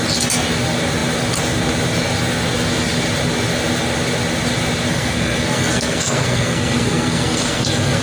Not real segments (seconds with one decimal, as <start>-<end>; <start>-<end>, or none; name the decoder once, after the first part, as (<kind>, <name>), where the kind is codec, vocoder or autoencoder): 4.9-8.0 (codec, SNAC)